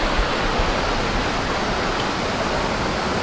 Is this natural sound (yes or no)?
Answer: yes